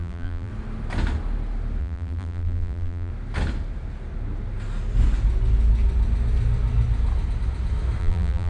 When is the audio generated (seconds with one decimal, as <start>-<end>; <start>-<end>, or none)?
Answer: 0.0-0.5; 1.8-3.1; 8.0-8.5